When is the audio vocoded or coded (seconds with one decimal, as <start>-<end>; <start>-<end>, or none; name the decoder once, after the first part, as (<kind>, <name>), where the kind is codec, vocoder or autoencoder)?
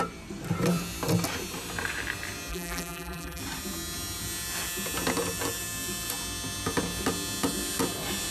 2.5-3.4 (vocoder, BigVGAN v2)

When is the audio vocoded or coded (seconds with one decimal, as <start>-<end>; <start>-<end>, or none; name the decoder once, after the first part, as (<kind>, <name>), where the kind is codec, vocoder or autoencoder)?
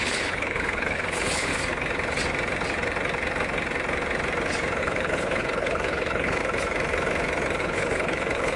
0.0-1.5 (codec, HILCodec); 4.8-6.4; 7.6-8.6